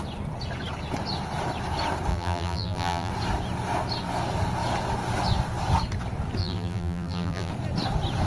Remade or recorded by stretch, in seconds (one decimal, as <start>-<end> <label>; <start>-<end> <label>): 0.0-2.1 recorded; 2.1-3.1 remade; 3.1-6.4 recorded; 6.4-7.5 remade; 7.5-8.3 recorded